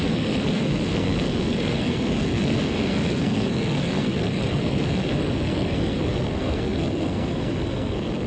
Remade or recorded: remade